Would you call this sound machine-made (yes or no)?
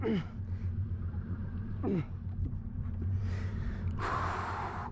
yes